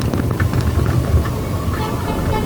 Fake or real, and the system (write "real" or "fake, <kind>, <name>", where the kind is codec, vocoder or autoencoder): real